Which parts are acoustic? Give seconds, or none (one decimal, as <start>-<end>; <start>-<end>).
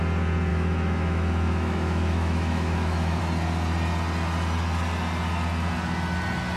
0.0-0.5; 3.2-6.6